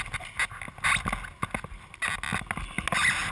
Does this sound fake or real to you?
real